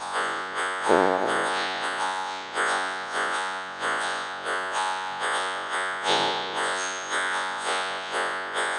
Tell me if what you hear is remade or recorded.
remade